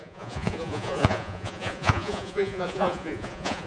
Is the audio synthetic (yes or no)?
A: yes